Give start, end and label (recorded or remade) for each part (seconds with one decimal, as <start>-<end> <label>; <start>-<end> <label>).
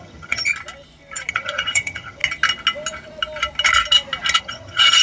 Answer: 0.0-0.5 remade; 0.5-1.3 recorded; 1.3-2.2 remade; 2.2-4.4 recorded; 4.4-5.0 remade